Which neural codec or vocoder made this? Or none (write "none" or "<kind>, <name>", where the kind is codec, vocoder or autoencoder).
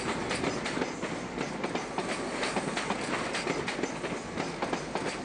none